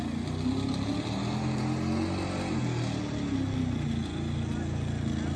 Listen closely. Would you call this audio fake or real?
real